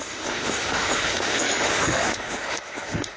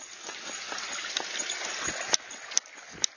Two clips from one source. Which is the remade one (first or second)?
first